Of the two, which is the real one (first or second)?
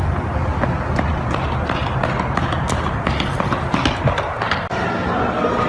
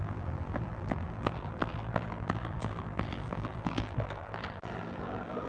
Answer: first